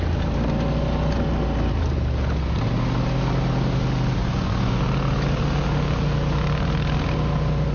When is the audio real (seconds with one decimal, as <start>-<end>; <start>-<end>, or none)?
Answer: 0.0-4.2; 4.8-7.7